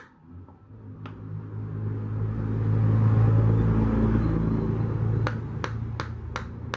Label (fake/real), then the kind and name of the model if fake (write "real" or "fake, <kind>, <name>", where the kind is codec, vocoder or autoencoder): real